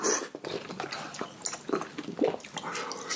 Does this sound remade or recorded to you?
recorded